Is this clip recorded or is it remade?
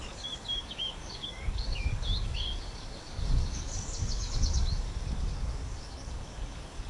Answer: remade